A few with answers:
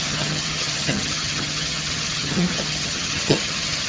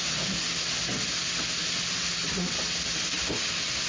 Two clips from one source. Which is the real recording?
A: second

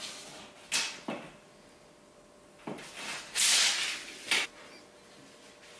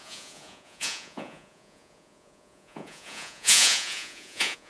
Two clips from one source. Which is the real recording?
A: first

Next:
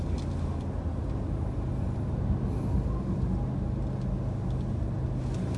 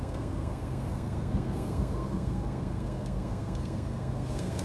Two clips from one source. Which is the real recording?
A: first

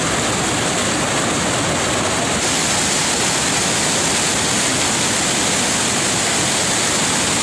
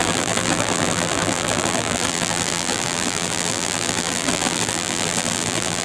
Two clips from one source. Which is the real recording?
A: first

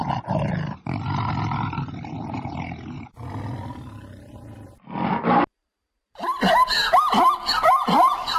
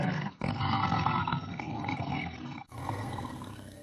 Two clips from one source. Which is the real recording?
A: first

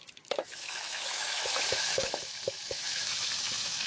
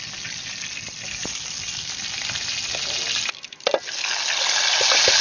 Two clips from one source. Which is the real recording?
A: second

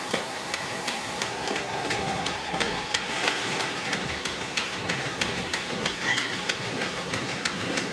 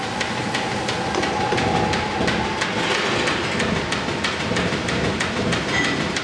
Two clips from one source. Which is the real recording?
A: second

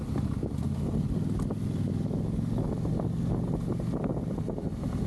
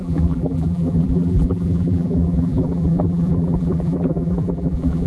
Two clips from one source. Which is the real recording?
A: first